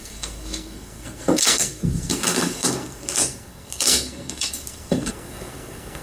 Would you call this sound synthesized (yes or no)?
yes